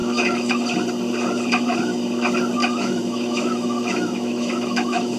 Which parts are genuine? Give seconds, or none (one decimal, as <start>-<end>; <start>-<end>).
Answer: 0.6-2.6